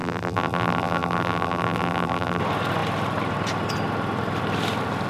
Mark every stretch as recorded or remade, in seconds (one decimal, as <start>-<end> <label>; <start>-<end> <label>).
0.0-2.4 remade; 2.4-5.1 recorded